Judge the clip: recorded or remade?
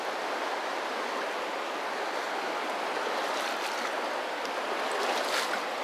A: recorded